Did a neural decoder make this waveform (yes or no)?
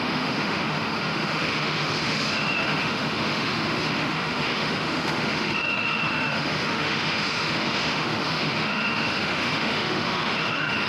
yes